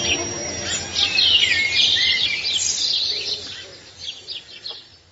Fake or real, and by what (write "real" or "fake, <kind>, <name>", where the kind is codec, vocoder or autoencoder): real